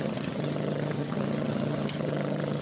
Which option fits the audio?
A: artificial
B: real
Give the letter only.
A